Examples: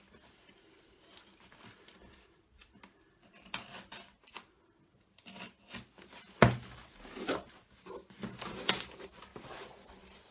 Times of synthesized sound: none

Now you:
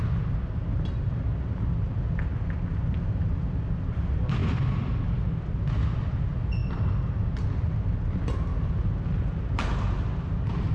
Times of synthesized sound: none